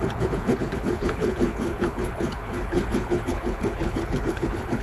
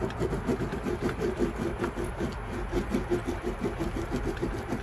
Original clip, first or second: second